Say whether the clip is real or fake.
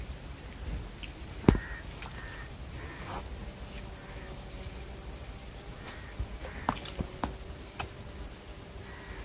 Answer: real